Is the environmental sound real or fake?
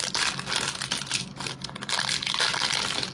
real